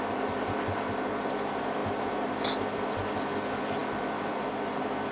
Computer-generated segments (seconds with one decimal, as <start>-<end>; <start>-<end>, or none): none